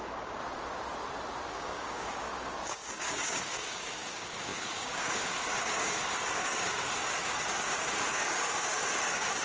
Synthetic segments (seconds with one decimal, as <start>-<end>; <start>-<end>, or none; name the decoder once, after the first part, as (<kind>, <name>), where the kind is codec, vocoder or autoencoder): 0.0-0.4 (codec, DAC); 1.5-9.4